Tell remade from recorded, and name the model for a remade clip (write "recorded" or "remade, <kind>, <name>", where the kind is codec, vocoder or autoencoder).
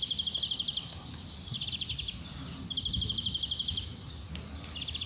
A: recorded